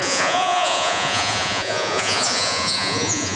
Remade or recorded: remade